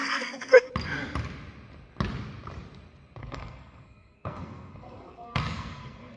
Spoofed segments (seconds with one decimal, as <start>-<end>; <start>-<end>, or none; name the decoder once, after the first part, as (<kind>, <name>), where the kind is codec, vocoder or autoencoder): 0.0-0.7 (codec, SNAC); 3.2-6.2